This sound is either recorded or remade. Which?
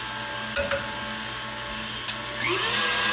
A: recorded